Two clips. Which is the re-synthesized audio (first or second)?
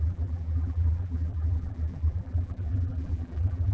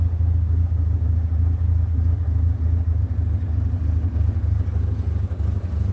first